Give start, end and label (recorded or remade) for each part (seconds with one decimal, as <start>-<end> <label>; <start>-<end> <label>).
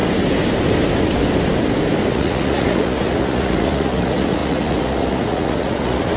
0.0-2.1 recorded; 2.1-6.2 remade